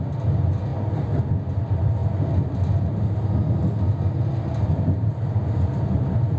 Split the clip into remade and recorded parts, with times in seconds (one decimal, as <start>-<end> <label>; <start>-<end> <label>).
0.0-6.4 recorded